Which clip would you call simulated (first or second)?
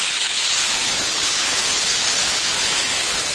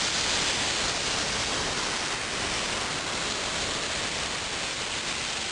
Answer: first